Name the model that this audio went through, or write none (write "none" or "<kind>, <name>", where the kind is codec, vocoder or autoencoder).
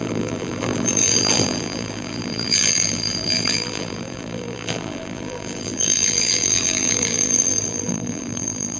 vocoder, BigVGAN v2